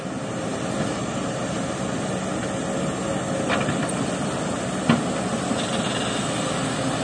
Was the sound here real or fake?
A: real